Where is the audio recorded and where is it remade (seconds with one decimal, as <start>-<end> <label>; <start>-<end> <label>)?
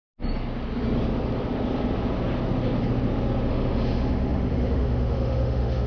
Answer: 0.0-3.5 recorded; 3.5-5.9 remade